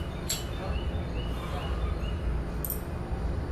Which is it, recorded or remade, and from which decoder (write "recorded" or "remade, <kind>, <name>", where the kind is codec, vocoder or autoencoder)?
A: recorded